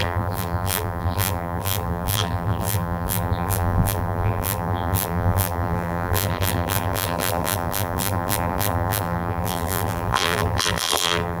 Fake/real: fake